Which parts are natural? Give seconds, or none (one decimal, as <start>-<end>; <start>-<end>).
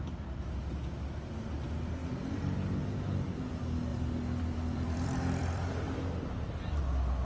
0.0-2.0; 3.0-3.9; 6.7-7.2